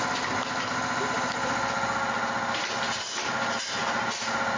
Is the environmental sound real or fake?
real